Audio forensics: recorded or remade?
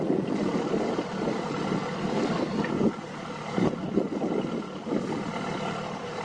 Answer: recorded